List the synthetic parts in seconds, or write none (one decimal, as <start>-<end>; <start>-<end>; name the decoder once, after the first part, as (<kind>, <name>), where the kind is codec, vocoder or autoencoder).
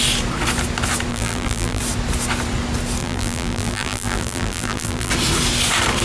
1.1-1.8 (vocoder, BigVGAN v2); 3.0-5.1